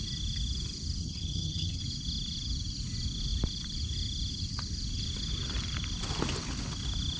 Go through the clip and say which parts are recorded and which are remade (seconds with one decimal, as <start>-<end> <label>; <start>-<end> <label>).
0.0-1.0 recorded; 1.0-1.8 remade; 1.8-7.2 recorded